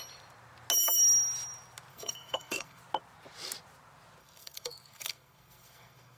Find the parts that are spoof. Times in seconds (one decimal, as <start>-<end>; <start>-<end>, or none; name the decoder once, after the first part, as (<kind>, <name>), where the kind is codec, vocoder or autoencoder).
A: 1.9-2.8 (codec, SNAC); 4.2-6.2